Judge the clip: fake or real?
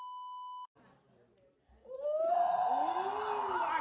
real